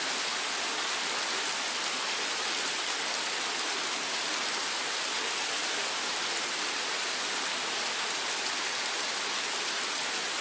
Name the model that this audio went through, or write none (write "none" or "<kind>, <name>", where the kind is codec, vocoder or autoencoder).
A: none